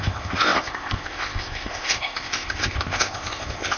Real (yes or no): no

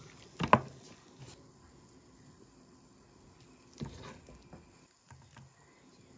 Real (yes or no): yes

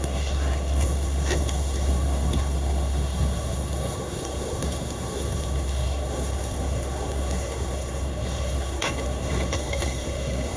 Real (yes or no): no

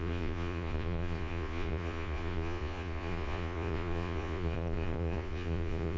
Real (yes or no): no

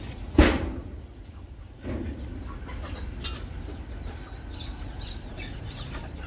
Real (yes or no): yes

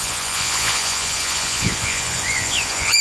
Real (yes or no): no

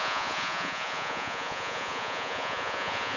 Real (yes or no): no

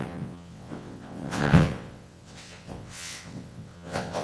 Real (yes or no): no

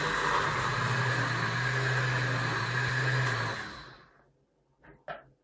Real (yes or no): yes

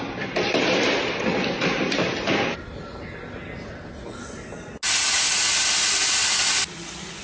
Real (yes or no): yes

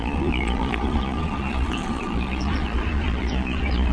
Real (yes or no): no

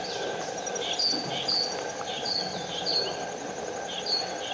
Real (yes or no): yes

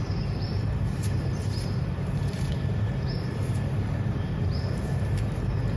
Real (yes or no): no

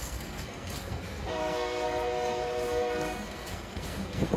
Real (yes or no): no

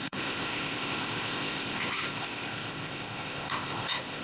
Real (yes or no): no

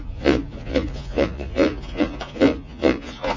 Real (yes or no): no